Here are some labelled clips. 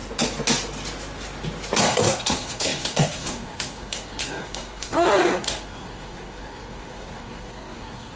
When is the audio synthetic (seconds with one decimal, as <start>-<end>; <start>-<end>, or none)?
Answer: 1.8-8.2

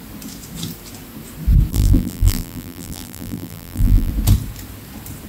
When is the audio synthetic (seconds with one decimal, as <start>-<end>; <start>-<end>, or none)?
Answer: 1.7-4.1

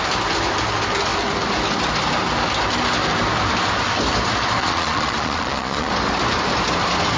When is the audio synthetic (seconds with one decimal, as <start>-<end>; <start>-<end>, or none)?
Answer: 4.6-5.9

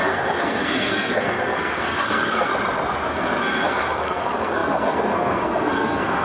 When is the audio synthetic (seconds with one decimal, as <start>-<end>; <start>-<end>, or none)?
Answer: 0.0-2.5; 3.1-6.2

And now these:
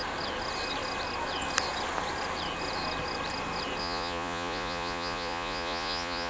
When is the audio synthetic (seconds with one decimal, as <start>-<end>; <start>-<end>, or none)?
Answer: 3.8-6.3

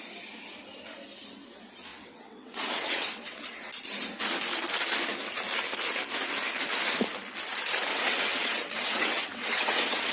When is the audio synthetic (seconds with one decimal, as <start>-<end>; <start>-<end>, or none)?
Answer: 1.9-3.7; 7.9-10.1

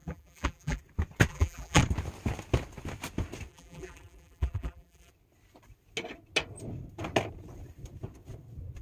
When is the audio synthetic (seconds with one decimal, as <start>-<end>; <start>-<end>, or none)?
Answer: 0.0-0.8; 1.3-1.8; 3.5-5.1